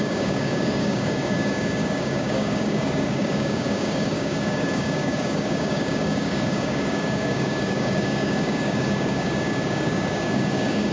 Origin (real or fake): fake